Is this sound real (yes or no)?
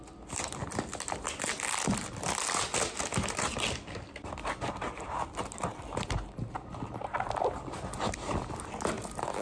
yes